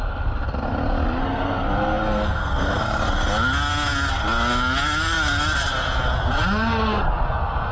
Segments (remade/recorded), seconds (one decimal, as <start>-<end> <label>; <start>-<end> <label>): 0.0-1.2 recorded; 1.2-2.8 remade; 2.8-7.7 recorded